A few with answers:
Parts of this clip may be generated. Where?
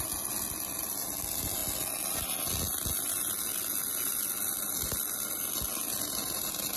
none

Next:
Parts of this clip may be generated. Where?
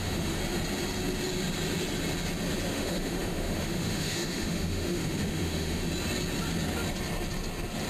0.0-0.4 (autoencoder, DAC-VAE); 2.7-5.8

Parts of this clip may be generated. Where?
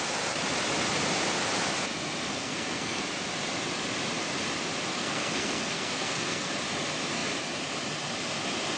2.3-3.0 (codec, SNAC); 4.9-6.5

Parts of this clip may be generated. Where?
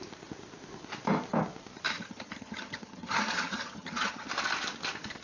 1.9-4.3 (vocoder, HiFi-GAN)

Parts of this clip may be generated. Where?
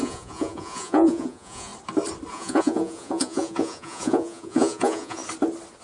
0.0-1.7 (vocoder, Vocos); 2.3-5.2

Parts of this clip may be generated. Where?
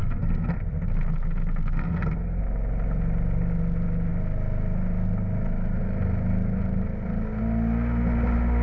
0.0-0.6 (codec, SNAC); 1.6-2.4